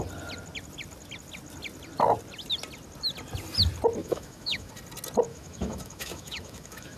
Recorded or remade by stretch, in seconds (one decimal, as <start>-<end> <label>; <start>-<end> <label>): 0.0-4.0 recorded; 4.0-4.7 remade; 4.7-5.3 recorded; 5.3-7.0 remade